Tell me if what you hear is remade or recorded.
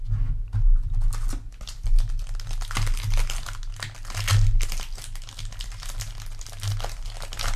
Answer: recorded